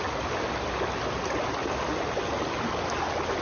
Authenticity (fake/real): real